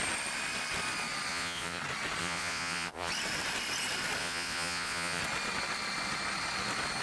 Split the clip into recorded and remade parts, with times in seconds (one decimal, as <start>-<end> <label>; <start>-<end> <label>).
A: 0.0-1.3 recorded; 1.3-1.8 remade; 1.8-2.2 recorded; 2.2-3.1 remade; 3.1-4.2 recorded; 4.2-5.2 remade; 5.2-7.0 recorded